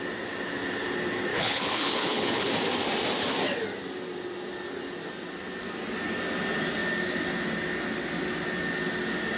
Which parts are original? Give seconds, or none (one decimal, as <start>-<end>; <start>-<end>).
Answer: 0.0-1.3; 2.5-9.4